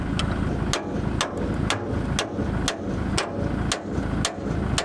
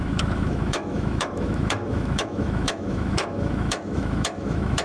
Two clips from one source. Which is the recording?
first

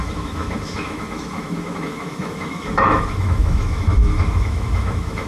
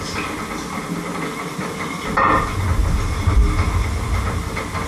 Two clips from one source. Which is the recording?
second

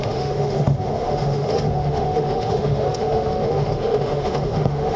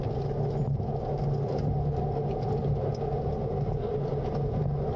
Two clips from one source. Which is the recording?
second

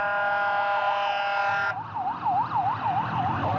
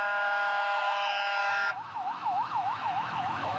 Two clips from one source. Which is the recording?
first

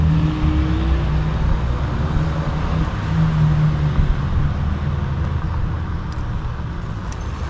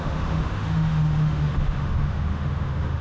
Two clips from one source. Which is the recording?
first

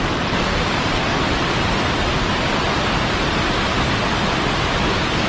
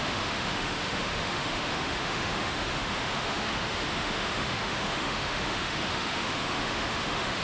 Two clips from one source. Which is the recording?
first